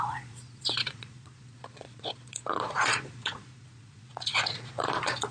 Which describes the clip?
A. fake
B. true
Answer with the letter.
A